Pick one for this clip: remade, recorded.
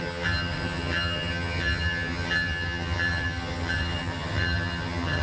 remade